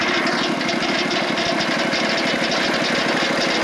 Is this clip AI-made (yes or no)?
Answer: no